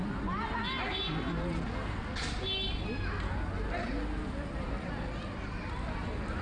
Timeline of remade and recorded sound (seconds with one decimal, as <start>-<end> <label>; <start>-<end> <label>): 0.0-6.4 recorded